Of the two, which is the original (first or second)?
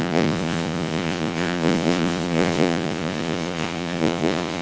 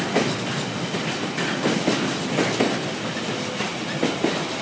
second